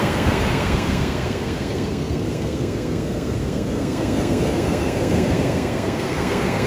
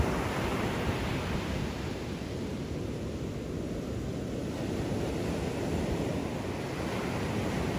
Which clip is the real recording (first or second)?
second